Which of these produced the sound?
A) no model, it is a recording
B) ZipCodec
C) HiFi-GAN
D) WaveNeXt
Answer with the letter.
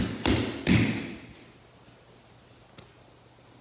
A